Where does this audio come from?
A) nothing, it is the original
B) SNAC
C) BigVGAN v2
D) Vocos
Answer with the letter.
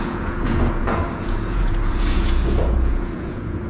D